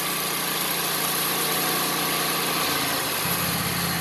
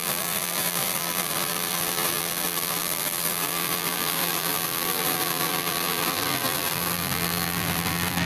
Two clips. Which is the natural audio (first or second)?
first